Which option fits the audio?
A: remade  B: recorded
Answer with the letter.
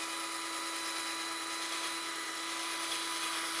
B